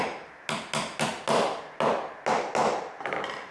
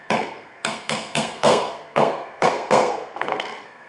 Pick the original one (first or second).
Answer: first